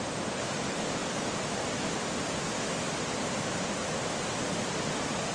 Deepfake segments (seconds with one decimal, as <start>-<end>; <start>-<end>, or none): none